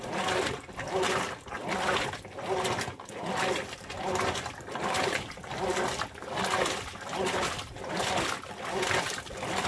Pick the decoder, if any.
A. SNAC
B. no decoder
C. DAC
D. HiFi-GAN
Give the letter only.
B